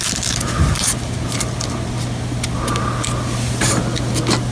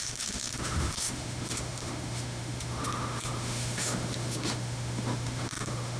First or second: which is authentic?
first